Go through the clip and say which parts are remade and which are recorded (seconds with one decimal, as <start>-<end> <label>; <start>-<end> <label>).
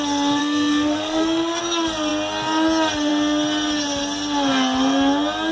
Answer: 0.0-0.4 recorded; 0.4-1.6 remade; 1.6-5.5 recorded